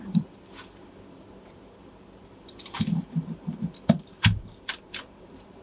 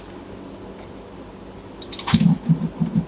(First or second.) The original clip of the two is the second